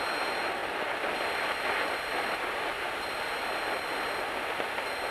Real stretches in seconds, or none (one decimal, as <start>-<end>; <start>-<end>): 0.0-5.1